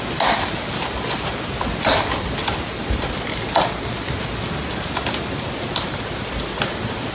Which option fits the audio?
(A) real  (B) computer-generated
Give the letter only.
A